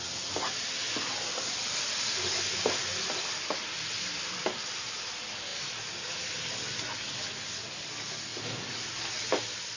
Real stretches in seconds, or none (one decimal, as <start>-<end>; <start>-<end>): 0.0-9.8